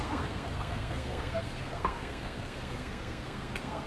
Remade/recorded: remade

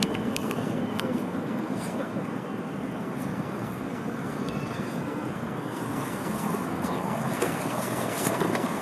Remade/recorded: remade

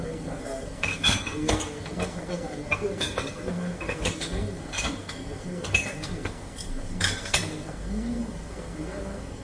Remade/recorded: remade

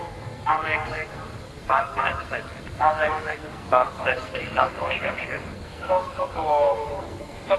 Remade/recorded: remade